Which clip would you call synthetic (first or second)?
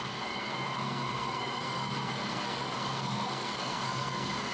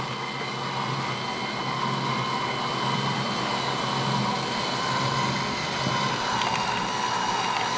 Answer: first